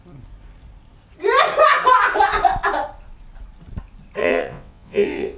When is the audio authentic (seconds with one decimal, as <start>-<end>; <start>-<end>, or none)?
0.0-4.2